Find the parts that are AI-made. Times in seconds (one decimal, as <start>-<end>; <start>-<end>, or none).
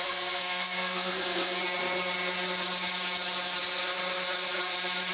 0.0-1.6